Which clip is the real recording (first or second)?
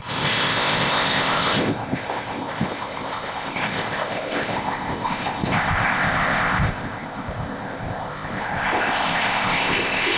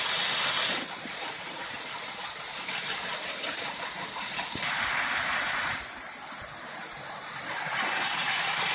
second